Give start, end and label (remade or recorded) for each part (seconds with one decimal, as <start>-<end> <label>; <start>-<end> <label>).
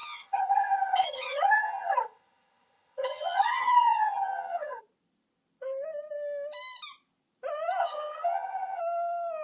0.0-4.8 remade; 4.8-7.8 recorded; 7.8-8.8 remade; 8.8-9.4 recorded